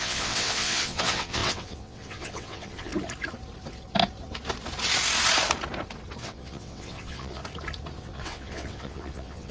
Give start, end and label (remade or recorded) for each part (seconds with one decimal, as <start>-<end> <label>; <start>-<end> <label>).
0.0-2.9 remade; 2.9-6.2 recorded; 6.2-7.4 remade; 7.4-8.0 recorded; 8.0-9.5 remade